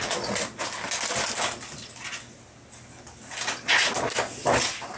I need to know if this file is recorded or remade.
recorded